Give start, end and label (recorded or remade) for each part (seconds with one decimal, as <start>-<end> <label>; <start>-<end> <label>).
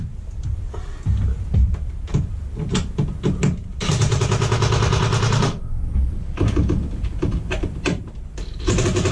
0.0-0.5 remade; 0.5-2.1 recorded; 2.1-3.1 remade; 3.1-3.7 recorded; 3.7-4.2 remade; 4.2-9.1 recorded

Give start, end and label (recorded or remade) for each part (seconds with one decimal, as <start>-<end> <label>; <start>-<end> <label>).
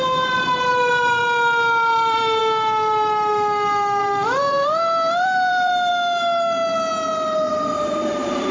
0.0-1.2 remade; 1.2-1.9 recorded; 1.9-2.4 remade; 2.4-4.0 recorded; 4.0-5.9 remade; 5.9-7.5 recorded; 7.5-8.5 remade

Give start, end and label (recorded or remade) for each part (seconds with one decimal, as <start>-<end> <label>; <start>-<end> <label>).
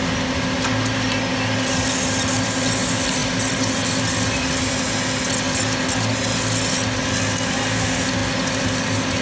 0.0-9.2 recorded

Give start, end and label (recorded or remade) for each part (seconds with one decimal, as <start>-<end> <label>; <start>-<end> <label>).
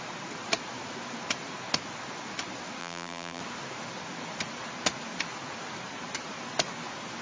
0.0-2.8 recorded; 2.8-3.4 remade; 3.4-7.2 recorded